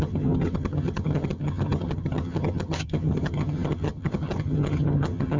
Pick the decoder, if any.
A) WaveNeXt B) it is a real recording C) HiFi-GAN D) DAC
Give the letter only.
C